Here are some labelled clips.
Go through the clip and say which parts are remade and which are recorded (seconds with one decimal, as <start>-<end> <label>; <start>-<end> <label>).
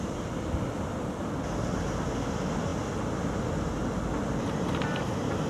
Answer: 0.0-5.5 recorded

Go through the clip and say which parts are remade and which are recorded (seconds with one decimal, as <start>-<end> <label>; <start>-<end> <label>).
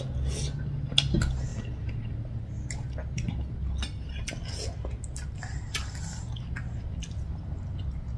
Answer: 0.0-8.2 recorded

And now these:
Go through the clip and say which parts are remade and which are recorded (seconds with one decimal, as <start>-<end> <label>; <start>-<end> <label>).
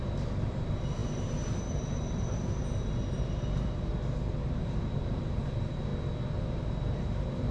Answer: 0.0-5.9 remade; 5.9-6.6 recorded; 6.6-7.5 remade